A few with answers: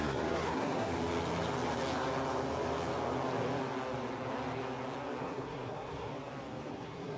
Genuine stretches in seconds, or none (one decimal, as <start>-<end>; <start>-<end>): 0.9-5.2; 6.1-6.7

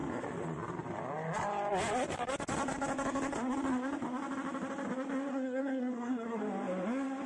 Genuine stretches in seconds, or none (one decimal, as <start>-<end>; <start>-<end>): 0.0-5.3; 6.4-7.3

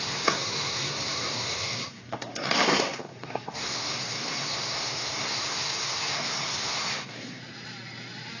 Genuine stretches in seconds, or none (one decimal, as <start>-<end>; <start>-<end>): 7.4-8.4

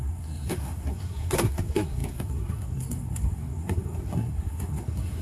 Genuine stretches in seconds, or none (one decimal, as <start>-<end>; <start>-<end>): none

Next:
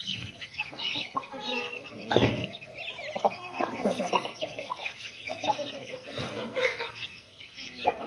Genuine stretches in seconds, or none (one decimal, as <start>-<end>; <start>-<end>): 2.7-3.2

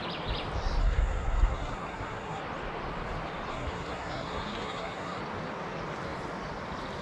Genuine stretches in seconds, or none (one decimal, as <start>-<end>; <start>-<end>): 0.0-0.8; 2.4-3.5; 5.2-7.0